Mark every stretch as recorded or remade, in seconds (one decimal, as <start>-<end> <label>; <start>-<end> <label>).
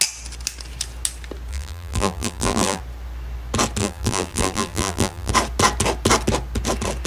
0.0-1.5 recorded; 1.5-2.8 remade; 2.8-3.8 recorded; 3.8-5.3 remade; 5.3-7.1 recorded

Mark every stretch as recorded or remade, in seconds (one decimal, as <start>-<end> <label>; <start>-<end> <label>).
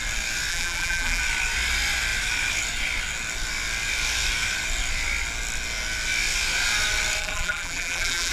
0.0-0.5 recorded; 0.5-1.2 remade; 1.2-7.2 recorded; 7.2-8.3 remade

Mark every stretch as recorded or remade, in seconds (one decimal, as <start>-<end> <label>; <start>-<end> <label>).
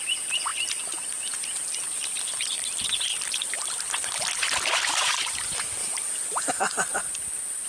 0.0-7.7 remade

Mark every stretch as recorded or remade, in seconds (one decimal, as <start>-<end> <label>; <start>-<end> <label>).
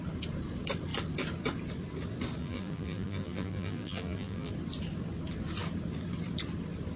0.0-2.4 recorded; 2.4-4.5 remade; 4.5-7.0 recorded